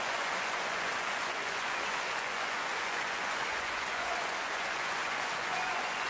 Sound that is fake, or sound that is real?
fake